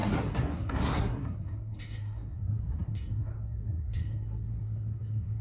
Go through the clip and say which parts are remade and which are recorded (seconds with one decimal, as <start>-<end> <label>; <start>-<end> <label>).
0.0-5.4 remade